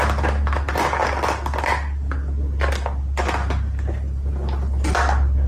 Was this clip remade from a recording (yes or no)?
no